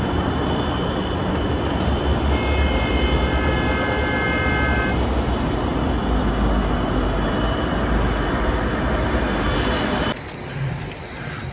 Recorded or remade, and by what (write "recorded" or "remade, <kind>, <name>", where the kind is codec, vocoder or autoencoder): recorded